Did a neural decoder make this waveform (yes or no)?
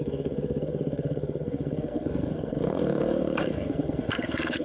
yes